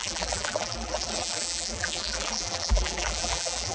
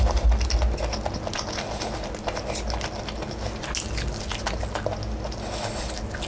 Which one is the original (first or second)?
second